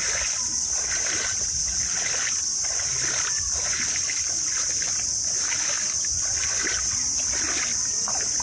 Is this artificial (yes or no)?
no